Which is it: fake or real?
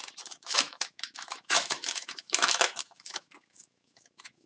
fake